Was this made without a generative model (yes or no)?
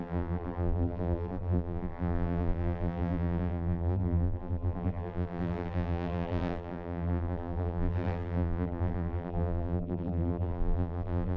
no